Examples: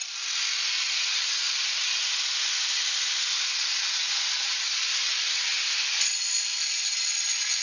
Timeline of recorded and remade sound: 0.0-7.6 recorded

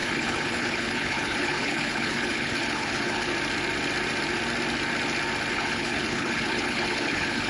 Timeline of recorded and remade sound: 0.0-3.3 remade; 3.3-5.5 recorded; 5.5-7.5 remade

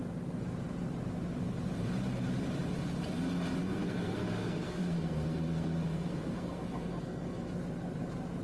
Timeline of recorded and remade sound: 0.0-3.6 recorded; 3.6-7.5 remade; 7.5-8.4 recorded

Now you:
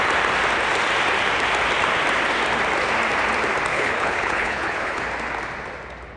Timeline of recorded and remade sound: 0.0-3.7 recorded; 3.7-5.0 remade; 5.0-6.2 recorded

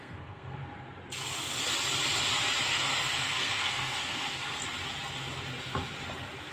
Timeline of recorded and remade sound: 0.0-0.6 remade; 0.6-2.6 recorded; 2.6-4.6 remade; 4.6-6.5 recorded

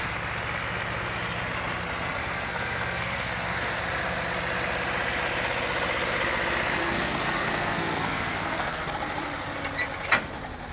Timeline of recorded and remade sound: 0.0-2.2 recorded; 2.2-3.8 remade; 3.8-6.8 recorded; 6.8-8.9 remade; 8.9-10.7 recorded

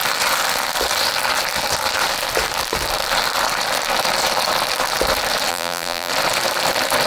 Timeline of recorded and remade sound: 0.0-5.5 recorded; 5.5-6.1 remade; 6.1-7.1 recorded

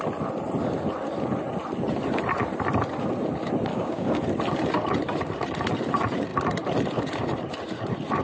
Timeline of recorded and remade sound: 0.0-3.7 recorded; 3.7-4.2 remade; 4.2-8.2 recorded